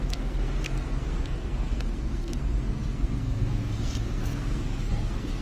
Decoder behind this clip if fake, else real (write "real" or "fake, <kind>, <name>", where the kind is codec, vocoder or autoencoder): fake, codec, SNAC